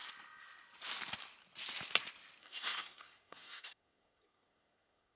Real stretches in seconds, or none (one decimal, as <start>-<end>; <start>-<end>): 0.0-2.4